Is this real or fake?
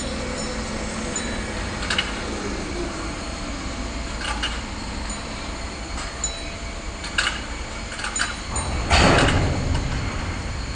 real